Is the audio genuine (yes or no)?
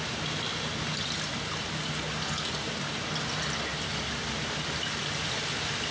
yes